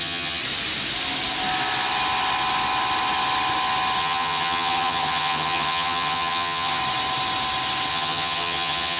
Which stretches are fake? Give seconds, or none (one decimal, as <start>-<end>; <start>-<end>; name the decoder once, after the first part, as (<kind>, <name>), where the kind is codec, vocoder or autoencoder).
0.0-0.4 (vocoder, HiFi-GAN); 4.0-6.8; 7.9-9.0